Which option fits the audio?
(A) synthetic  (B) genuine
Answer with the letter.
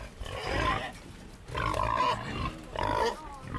B